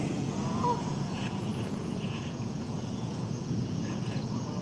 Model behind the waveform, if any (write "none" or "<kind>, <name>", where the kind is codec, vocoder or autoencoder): vocoder, Vocos